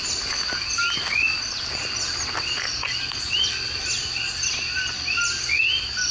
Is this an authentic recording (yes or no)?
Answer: yes